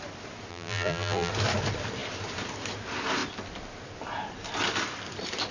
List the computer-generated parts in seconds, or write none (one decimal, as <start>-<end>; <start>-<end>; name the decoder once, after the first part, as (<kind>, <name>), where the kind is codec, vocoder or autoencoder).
0.5-1.3 (vocoder, BigVGAN v2)